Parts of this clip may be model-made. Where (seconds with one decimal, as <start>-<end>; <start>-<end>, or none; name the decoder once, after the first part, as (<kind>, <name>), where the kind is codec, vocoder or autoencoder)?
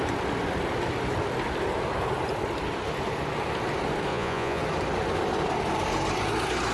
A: 4.1-4.6 (vocoder, Vocos)